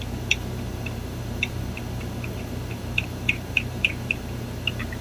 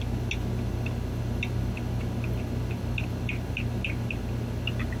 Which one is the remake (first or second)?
first